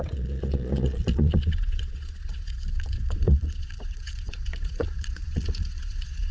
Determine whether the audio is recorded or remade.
remade